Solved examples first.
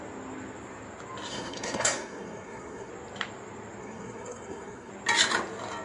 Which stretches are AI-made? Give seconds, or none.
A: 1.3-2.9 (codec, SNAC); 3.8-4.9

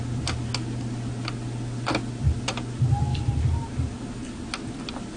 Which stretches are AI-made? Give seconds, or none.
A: none

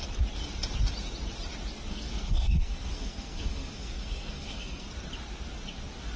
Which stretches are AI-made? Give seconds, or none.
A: 1.9-4.9 (codec, SNAC)

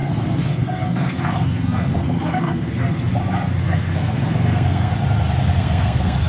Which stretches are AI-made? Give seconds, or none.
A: 0.0-3.1 (codec, SNAC); 3.6-4.9; 5.5-6.3

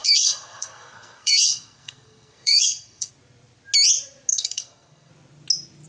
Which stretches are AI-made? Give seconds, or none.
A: 0.0-3.1 (codec, SNAC); 4.3-5.1

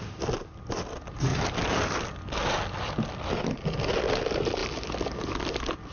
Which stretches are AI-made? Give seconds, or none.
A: none